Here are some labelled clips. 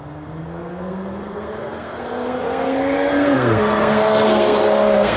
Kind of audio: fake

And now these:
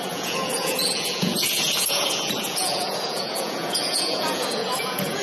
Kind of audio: fake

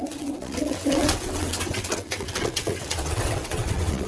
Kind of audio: fake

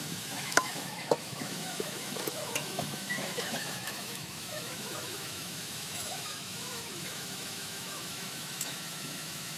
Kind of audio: fake